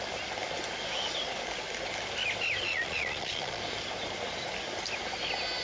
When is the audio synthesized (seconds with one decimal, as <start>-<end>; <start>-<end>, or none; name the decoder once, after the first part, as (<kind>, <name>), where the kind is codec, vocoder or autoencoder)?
2.6-3.6 (vocoder, Vocos)